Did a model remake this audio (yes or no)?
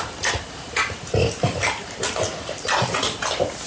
no